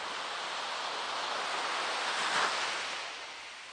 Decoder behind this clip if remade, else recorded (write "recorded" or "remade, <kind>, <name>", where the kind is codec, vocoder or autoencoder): recorded